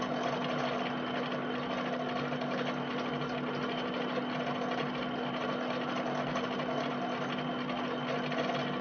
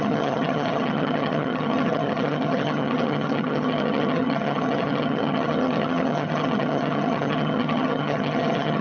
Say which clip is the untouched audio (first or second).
first